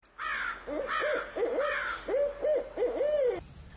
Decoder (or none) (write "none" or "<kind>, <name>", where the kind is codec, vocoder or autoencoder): none